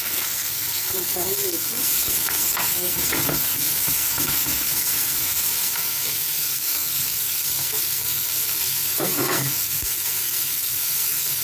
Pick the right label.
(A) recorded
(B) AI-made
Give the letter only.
B